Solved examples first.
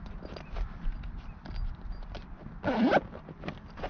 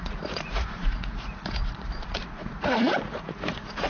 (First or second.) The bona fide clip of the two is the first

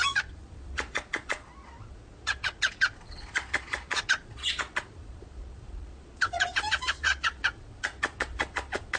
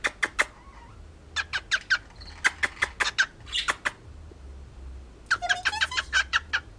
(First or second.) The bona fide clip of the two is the second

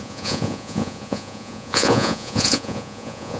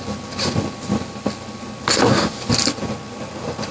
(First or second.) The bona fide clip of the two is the second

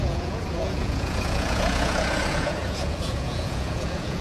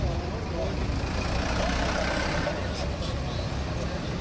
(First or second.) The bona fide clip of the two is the second